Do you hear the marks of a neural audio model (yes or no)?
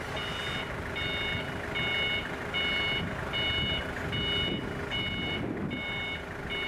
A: no